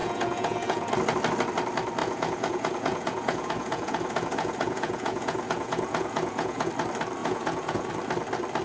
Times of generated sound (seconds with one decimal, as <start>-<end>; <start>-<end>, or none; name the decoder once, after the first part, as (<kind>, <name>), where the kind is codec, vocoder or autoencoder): 0.0-0.9 (vocoder, Vocos); 2.0-6.7; 7.2-7.9